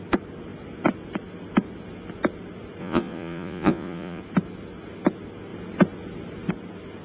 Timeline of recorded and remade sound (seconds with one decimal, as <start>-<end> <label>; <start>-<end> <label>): 0.0-2.8 recorded; 2.8-4.2 remade; 4.2-7.0 recorded